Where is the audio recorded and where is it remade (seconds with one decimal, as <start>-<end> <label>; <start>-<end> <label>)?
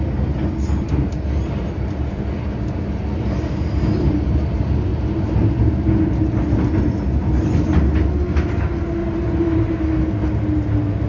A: 0.0-4.9 recorded; 4.9-5.6 remade; 5.6-9.0 recorded; 9.0-9.8 remade; 9.8-11.1 recorded